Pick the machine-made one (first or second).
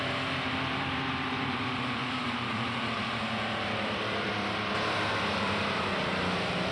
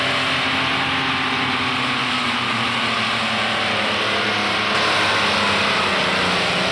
first